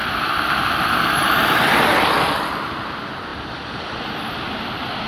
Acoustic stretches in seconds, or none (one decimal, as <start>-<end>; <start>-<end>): 1.0-3.3